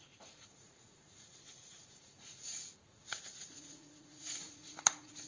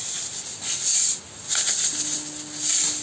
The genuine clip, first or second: second